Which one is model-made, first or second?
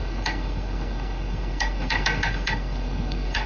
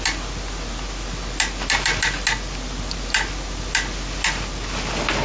first